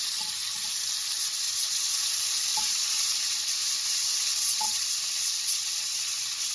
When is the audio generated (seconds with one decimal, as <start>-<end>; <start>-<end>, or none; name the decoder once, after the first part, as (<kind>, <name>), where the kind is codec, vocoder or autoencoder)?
1.2-1.9 (vocoder, WaveNeXt); 2.5-6.5